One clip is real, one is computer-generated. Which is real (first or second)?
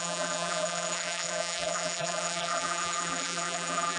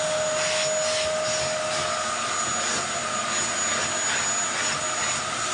second